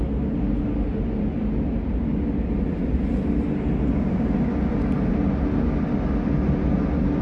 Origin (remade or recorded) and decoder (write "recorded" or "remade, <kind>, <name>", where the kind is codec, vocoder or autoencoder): recorded